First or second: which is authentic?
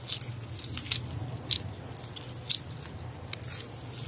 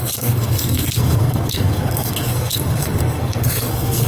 first